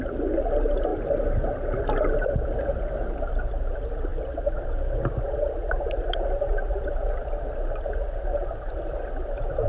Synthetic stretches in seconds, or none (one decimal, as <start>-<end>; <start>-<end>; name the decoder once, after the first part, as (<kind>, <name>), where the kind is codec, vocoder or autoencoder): none